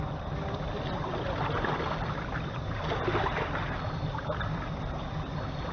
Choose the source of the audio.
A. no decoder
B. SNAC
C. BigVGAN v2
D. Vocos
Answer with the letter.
C